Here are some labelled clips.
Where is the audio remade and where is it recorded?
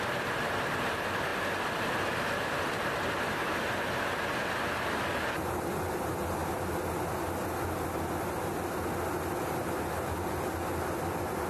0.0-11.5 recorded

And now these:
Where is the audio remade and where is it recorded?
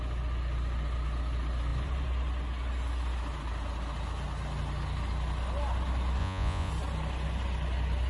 0.0-6.2 recorded; 6.2-6.7 remade; 6.7-8.1 recorded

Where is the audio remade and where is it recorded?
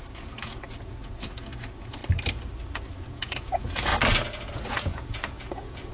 0.0-2.0 remade; 2.0-3.0 recorded; 3.0-3.9 remade; 3.9-4.5 recorded; 4.5-5.9 remade